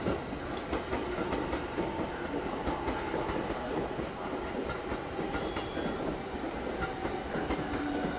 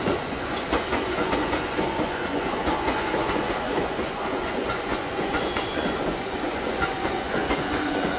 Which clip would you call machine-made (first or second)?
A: second